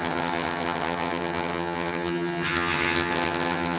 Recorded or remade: remade